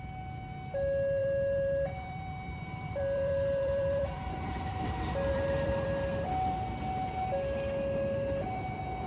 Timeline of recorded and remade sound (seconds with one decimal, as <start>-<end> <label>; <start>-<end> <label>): 0.0-1.2 recorded; 1.2-6.3 remade; 6.3-9.1 recorded